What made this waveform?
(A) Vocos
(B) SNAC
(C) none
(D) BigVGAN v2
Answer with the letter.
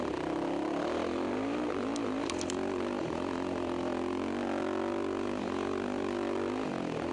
C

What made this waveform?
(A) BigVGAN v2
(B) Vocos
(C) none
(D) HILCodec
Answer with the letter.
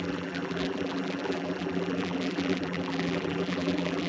A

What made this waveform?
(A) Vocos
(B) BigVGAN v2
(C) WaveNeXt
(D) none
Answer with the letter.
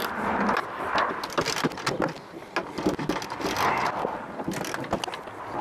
D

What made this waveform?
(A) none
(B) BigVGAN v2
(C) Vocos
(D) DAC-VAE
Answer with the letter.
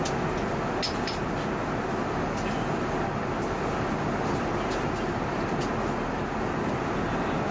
A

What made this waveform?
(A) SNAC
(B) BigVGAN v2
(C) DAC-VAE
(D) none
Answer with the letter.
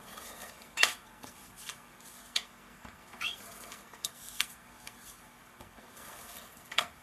A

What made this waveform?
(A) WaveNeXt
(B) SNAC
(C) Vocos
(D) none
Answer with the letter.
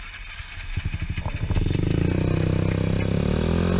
D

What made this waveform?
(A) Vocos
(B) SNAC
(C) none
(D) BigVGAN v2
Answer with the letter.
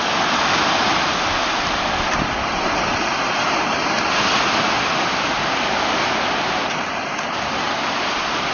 D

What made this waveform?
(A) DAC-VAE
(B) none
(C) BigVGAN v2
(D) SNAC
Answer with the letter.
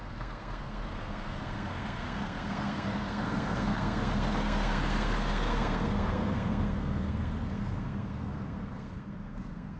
D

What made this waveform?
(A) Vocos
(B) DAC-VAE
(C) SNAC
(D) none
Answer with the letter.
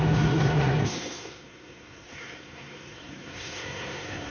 C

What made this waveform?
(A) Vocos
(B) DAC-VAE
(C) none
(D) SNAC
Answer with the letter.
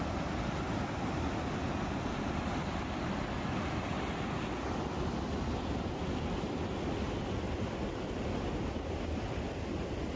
C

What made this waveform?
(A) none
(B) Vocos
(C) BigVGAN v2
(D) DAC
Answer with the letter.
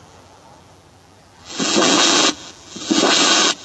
C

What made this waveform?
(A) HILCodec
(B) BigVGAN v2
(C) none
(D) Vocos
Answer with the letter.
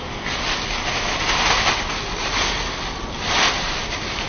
C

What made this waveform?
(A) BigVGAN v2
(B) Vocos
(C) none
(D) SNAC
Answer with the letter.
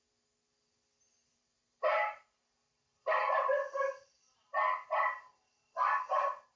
C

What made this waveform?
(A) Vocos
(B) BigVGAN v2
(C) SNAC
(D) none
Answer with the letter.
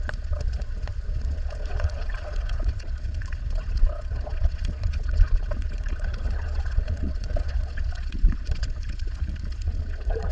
A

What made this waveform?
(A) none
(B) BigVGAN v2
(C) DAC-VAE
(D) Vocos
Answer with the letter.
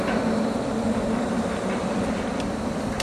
B